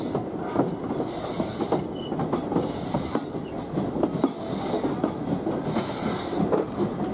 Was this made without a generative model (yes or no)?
yes